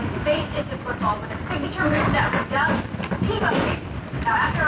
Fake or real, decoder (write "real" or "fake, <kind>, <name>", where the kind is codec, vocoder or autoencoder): fake, vocoder, BigVGAN v2